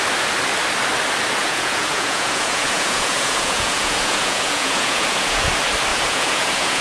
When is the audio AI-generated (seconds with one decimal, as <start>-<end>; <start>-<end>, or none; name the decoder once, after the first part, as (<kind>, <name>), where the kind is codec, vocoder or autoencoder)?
1.4-5.5 (vocoder, Vocos); 5.9-6.8